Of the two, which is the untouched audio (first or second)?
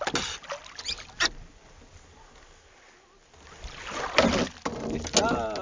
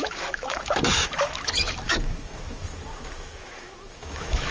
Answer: first